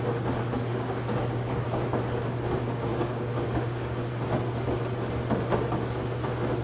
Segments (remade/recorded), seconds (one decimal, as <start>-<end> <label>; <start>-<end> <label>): 0.0-0.7 recorded; 0.7-1.6 remade; 1.6-2.9 recorded; 2.9-4.1 remade; 4.1-6.6 recorded